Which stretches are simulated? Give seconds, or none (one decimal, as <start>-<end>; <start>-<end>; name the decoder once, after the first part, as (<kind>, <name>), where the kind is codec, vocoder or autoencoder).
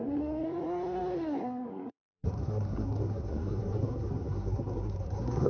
0.0-5.5 (codec, SNAC)